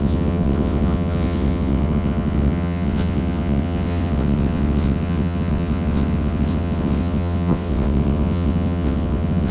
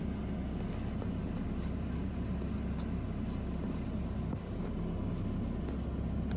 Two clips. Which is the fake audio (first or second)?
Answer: first